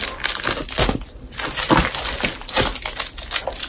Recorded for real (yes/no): yes